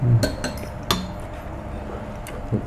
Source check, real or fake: real